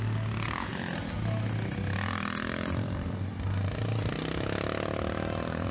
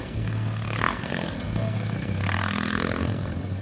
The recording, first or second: first